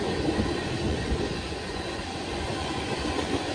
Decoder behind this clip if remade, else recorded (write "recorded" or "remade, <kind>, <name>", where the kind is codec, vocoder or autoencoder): remade, vocoder, Vocos